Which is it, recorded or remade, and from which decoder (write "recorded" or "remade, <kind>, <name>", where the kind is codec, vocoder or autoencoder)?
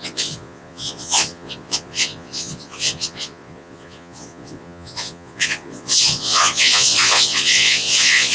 remade, vocoder, Vocos